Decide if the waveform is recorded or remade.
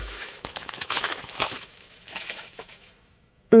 remade